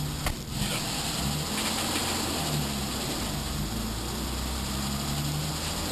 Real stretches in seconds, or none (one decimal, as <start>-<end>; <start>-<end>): 0.0-5.9